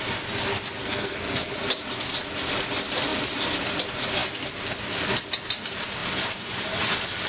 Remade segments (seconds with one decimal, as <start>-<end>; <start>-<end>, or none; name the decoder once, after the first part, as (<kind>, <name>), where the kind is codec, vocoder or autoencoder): 0.8-1.5 (codec, SNAC)